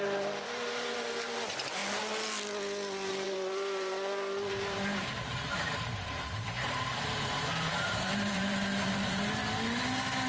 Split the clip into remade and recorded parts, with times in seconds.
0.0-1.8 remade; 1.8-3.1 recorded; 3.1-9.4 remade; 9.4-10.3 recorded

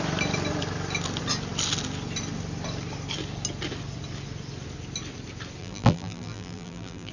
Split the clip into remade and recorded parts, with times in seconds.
0.0-5.6 recorded; 5.6-7.1 remade

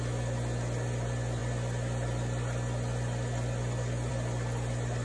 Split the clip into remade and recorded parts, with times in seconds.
0.0-5.0 recorded

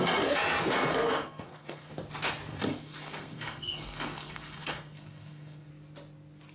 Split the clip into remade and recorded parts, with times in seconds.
0.0-0.6 recorded; 0.6-1.9 remade; 1.9-2.5 recorded; 2.5-5.7 remade; 5.7-6.5 recorded

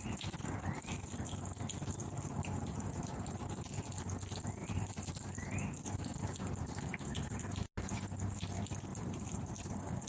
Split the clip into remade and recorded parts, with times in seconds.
0.0-2.0 recorded; 2.0-3.4 remade; 3.4-4.6 recorded; 4.6-5.3 remade; 5.3-8.9 recorded; 8.9-9.5 remade; 9.5-10.1 recorded

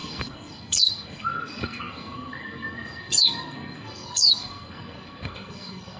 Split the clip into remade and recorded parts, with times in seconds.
0.0-6.0 remade

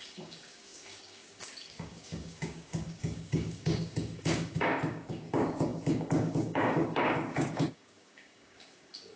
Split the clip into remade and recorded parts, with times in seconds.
0.0-9.2 remade